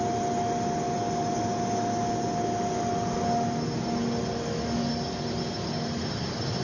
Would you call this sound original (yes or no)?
yes